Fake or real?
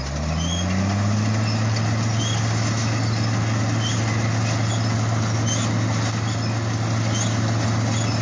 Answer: real